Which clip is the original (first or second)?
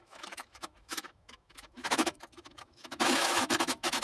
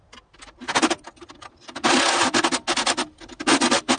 second